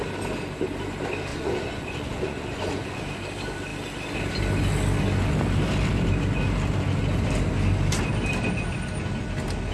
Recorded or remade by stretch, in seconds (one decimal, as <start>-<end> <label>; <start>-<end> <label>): 0.0-1.3 recorded; 1.3-3.0 remade; 3.0-9.7 recorded